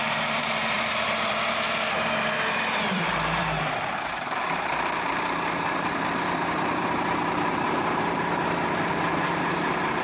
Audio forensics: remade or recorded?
remade